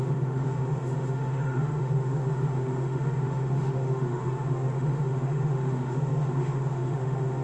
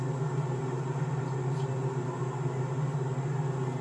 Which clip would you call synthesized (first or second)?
first